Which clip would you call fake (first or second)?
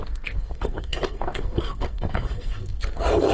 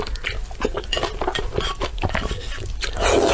first